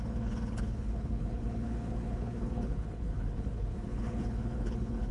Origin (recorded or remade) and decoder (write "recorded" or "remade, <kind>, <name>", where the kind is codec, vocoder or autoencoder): remade, codec, HILCodec